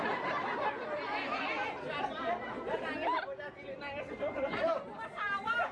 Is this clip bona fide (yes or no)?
yes